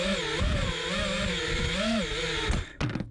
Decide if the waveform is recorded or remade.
recorded